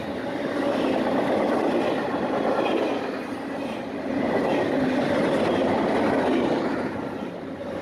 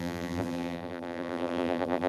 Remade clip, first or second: second